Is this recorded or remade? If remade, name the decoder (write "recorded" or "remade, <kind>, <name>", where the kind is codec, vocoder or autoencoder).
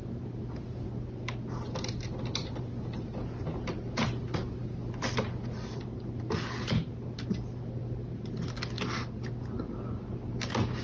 recorded